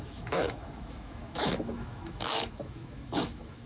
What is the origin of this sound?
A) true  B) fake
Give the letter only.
B